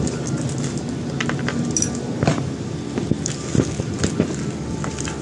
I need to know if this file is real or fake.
real